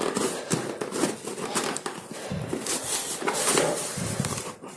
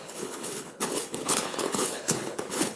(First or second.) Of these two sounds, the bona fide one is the first